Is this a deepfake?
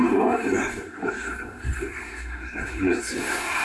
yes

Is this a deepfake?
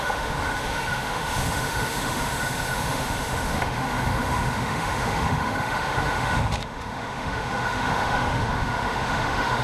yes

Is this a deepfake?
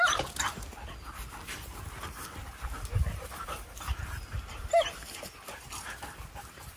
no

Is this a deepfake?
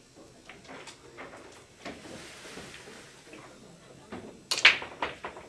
no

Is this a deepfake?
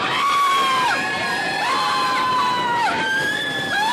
yes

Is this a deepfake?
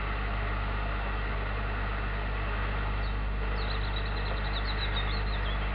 no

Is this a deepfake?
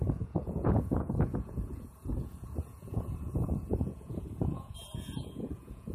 yes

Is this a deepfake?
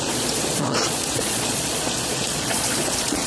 yes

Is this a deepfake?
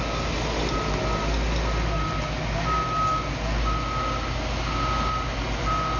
no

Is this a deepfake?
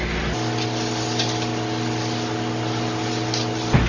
no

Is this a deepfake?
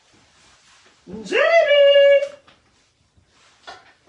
no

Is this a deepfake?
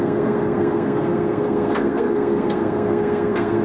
yes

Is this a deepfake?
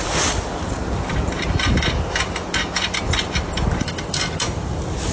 no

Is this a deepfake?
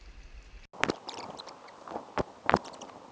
no